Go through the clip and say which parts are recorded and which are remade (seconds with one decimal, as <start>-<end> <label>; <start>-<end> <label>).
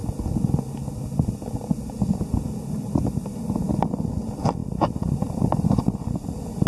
0.0-4.6 recorded; 4.6-6.0 remade; 6.0-6.7 recorded